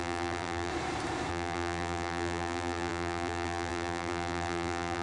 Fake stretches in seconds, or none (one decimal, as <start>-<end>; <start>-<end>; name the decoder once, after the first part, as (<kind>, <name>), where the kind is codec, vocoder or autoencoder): 0.0-0.7 (vocoder, BigVGAN v2); 1.3-5.0